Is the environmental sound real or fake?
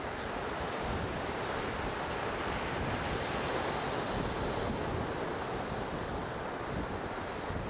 real